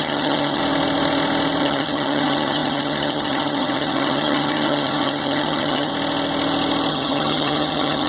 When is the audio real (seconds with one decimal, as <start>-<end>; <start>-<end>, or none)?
0.6-1.6; 5.9-6.9